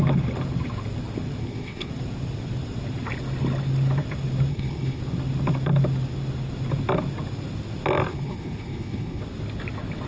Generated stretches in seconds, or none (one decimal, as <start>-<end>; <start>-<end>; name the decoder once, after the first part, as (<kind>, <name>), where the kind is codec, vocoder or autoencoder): 1.4-1.9 (codec, HILCodec); 4.5-5.0; 8.1-9.2